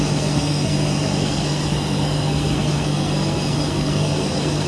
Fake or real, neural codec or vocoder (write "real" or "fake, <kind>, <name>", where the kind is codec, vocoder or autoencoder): fake, codec, SNAC